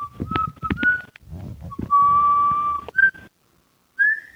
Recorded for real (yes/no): yes